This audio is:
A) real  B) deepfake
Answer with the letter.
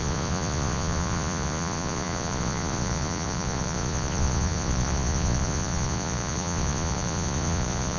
B